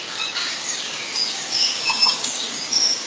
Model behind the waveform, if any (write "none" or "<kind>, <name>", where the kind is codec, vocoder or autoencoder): codec, DAC